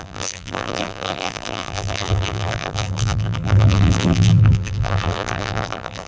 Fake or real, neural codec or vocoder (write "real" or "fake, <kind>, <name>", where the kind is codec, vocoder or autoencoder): fake, vocoder, BigVGAN v2